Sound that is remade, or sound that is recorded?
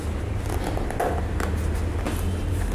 recorded